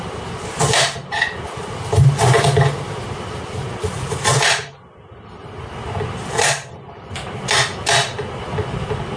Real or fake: real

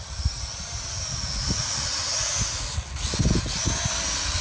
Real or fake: real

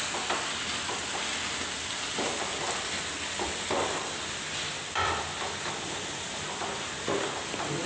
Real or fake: real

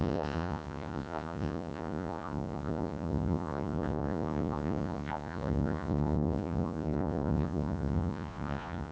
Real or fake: fake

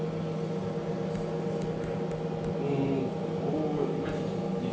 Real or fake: real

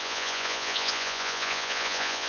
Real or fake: fake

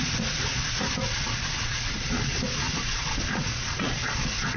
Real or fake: fake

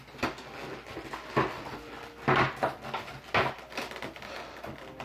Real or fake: real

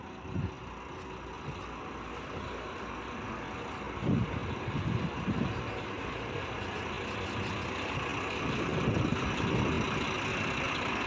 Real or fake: real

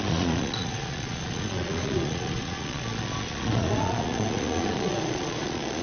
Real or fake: fake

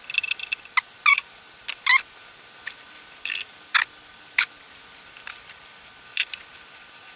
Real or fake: real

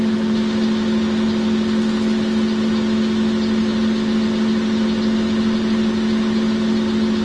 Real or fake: real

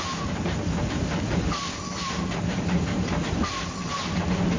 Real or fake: real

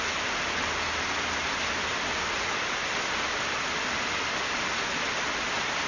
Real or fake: real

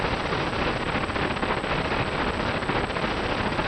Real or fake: real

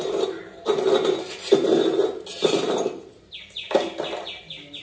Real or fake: real